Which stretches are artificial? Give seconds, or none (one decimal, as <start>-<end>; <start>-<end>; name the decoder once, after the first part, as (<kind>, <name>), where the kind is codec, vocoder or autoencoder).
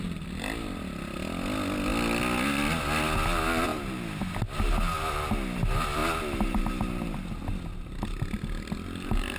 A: none